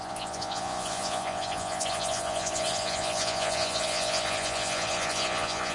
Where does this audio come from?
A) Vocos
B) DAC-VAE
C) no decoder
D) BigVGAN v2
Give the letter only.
A